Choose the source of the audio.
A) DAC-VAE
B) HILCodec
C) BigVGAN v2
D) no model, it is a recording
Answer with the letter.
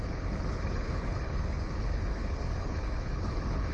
B